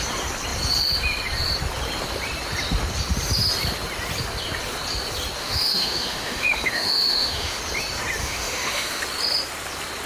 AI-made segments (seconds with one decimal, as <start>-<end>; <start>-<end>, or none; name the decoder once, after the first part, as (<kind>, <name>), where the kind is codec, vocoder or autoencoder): 5.4-7.6 (autoencoder, DAC-VAE); 8.2-9.0